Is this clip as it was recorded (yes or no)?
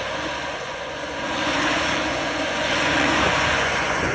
no